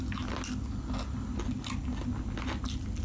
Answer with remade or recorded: recorded